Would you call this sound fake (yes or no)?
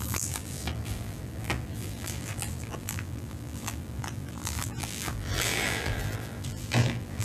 yes